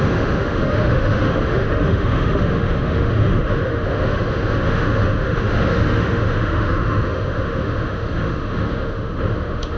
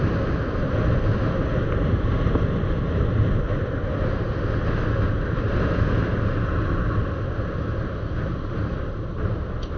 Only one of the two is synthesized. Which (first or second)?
first